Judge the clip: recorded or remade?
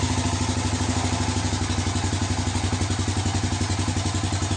recorded